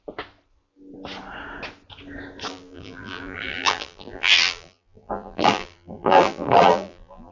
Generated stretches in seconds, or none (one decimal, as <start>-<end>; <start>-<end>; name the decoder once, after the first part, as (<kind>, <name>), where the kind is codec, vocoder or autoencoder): 2.5-7.3 (vocoder, BigVGAN v2)